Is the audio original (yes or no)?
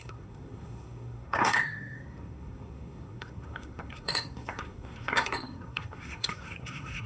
no